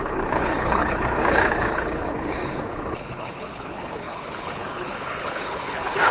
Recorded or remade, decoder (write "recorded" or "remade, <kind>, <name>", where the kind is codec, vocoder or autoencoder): remade, codec, HILCodec